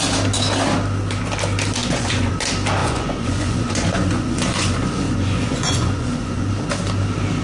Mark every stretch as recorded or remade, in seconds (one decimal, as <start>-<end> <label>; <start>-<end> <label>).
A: 0.0-1.8 recorded; 1.8-2.3 remade; 2.3-2.8 recorded; 2.8-6.5 remade; 6.5-7.4 recorded